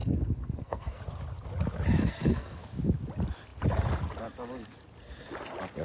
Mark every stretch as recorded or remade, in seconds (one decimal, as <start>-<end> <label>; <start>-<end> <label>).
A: 0.0-1.0 remade; 1.0-2.0 recorded; 2.0-2.6 remade; 2.6-5.8 recorded